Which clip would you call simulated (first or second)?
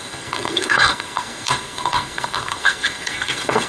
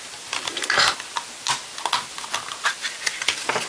first